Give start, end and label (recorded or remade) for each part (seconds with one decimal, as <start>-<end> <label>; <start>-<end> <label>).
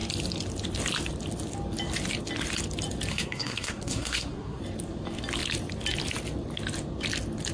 0.0-3.1 recorded; 3.1-4.6 remade; 4.6-7.5 recorded